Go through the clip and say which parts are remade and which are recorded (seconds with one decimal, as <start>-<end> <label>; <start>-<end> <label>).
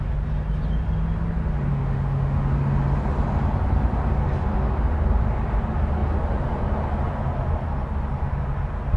0.0-1.7 recorded; 1.7-2.5 remade; 2.5-9.0 recorded